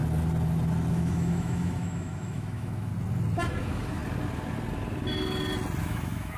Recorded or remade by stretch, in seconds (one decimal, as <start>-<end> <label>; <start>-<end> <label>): 0.0-0.9 recorded; 0.9-2.9 remade; 2.9-3.6 recorded; 3.6-4.0 remade; 4.0-5.8 recorded; 5.8-6.4 remade